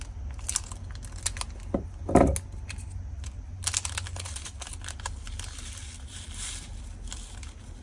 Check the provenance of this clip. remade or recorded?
recorded